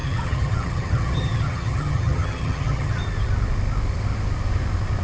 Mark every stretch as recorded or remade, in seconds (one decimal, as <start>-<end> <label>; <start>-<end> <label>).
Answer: 0.0-3.0 remade; 3.0-5.0 recorded